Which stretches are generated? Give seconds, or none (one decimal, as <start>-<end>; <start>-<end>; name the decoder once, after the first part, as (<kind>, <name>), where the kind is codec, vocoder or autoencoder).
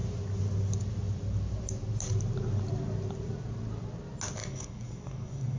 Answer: 4.4-5.6 (codec, DAC)